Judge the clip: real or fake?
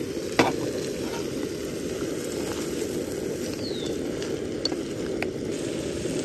real